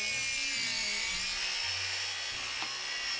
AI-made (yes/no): no